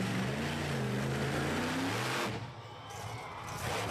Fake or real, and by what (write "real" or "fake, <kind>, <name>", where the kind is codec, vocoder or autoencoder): real